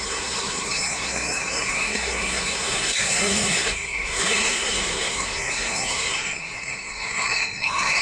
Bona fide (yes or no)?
no